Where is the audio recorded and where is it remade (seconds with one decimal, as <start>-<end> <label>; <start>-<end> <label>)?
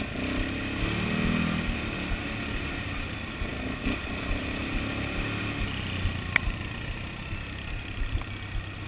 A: 0.0-8.9 recorded